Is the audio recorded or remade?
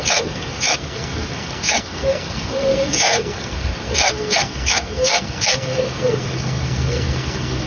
remade